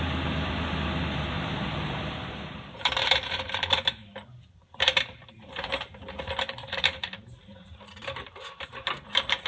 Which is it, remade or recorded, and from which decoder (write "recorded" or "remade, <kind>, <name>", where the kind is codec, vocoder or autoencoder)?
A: remade, vocoder, BigVGAN v2